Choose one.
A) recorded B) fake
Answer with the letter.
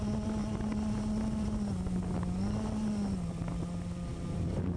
A